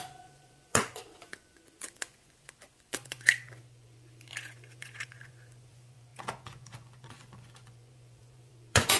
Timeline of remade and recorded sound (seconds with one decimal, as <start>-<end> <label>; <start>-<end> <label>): 0.0-9.0 remade